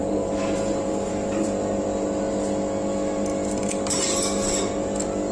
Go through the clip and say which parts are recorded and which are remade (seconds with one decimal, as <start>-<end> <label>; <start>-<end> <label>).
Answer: 0.0-5.3 recorded